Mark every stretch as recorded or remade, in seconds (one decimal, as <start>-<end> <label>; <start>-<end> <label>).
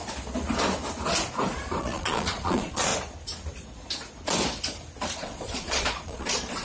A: 0.0-1.8 recorded; 1.8-2.9 remade; 2.9-5.2 recorded; 5.2-6.6 remade